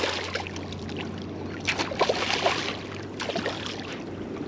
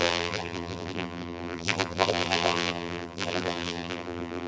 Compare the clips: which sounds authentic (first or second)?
first